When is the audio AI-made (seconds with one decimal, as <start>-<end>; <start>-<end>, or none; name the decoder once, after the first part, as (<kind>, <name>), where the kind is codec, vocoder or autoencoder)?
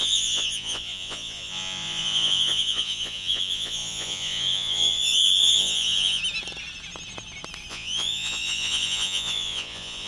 0.0-6.2 (vocoder, Vocos); 7.7-10.1